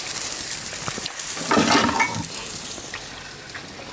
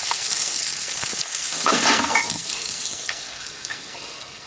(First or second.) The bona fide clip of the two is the first